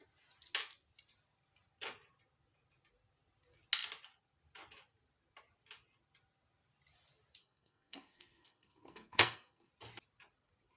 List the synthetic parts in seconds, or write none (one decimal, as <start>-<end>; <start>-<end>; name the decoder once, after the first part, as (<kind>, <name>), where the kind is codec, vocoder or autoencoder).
7.4-9.7 (codec, SNAC)